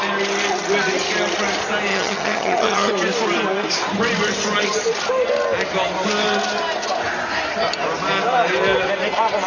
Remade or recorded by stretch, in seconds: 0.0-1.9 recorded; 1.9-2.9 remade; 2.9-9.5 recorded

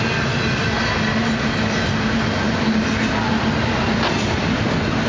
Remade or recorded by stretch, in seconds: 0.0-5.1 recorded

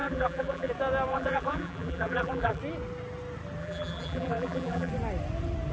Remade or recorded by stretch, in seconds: 0.0-0.7 remade; 0.7-1.1 recorded; 1.1-2.6 remade; 2.6-3.6 recorded; 3.6-4.9 remade; 4.9-5.7 recorded

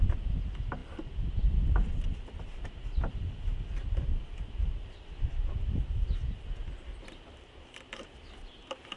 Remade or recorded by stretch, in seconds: 0.0-9.0 recorded

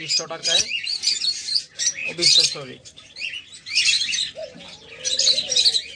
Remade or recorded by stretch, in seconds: 0.0-0.4 recorded; 0.4-1.6 remade; 1.6-6.0 recorded

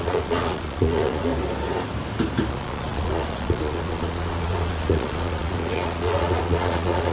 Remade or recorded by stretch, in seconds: 0.0-1.3 remade; 1.3-2.5 recorded; 2.5-7.1 remade

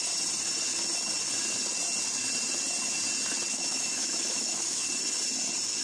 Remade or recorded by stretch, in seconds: 0.0-3.5 recorded; 3.5-4.8 remade; 4.8-5.8 recorded